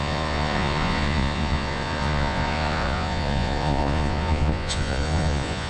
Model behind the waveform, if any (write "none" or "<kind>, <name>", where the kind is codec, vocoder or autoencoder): vocoder, Vocos